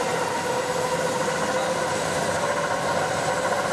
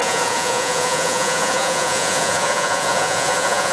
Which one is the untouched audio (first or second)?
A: first